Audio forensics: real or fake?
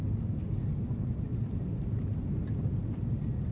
real